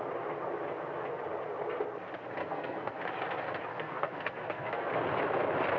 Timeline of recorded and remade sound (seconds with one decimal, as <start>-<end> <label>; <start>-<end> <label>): 0.0-2.4 recorded; 2.4-3.0 remade; 3.0-3.7 recorded; 3.7-4.9 remade; 4.9-5.8 recorded